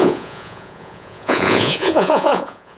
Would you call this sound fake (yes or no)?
yes